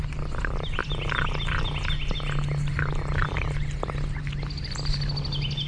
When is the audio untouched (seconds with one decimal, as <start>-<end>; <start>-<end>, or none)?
0.0-5.7